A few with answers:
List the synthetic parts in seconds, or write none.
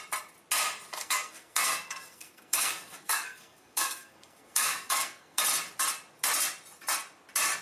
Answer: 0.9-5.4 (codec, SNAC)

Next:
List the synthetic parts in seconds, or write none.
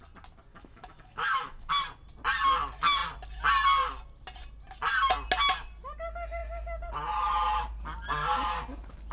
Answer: 0.5-1.7 (autoencoder, DAC-VAE)